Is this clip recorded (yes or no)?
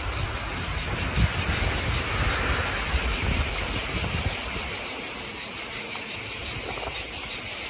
yes